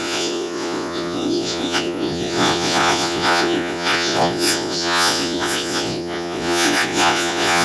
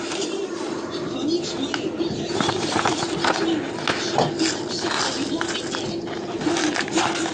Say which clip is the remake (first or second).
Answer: first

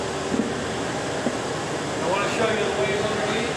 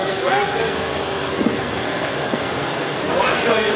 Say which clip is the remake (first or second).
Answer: second